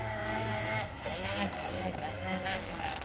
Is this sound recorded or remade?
remade